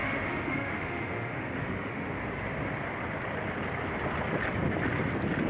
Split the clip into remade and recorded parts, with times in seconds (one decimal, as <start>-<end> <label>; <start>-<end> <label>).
0.0-2.1 remade; 2.1-5.5 recorded